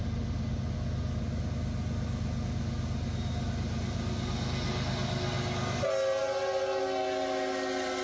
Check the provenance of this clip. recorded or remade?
recorded